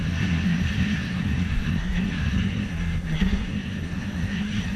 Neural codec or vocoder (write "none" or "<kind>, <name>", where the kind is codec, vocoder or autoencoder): codec, SNAC